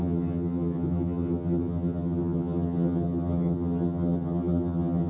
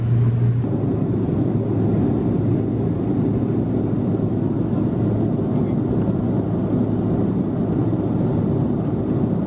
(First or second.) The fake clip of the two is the first